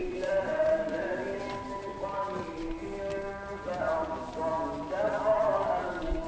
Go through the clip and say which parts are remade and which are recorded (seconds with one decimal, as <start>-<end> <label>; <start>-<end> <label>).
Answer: 0.0-1.1 remade; 1.1-6.3 recorded